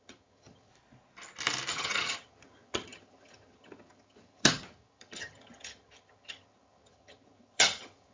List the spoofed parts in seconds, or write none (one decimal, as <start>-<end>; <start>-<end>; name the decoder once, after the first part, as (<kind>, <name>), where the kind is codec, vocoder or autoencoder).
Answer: 0.0-0.7 (vocoder, HiFi-GAN); 1.7-8.1